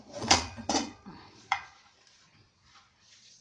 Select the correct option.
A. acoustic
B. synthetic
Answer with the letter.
B